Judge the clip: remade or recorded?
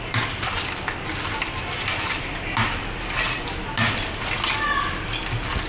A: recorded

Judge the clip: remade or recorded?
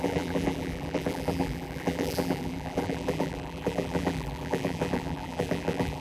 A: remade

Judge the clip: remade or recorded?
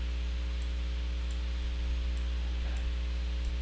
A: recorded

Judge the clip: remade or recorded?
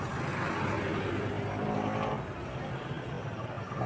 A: recorded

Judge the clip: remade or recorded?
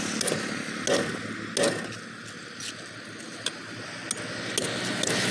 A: recorded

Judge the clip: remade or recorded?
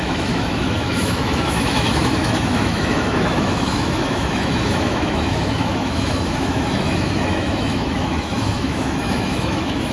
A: remade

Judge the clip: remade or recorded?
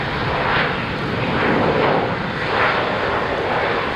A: recorded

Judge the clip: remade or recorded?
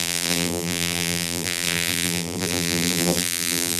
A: remade